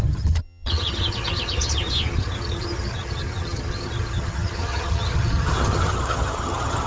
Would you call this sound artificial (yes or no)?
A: yes